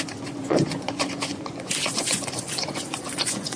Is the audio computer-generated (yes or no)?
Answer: yes